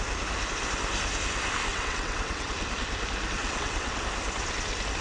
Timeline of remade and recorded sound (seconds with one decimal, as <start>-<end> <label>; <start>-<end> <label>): 0.0-1.7 recorded; 1.7-2.5 remade; 2.5-3.4 recorded; 3.4-4.0 remade; 4.0-5.0 recorded